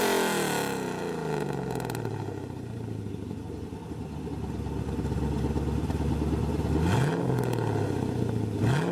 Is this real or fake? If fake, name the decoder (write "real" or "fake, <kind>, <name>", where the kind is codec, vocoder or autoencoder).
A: real